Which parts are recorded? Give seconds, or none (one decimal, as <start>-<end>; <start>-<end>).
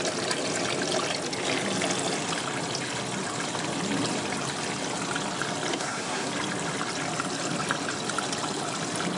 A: 0.0-5.7; 6.3-9.2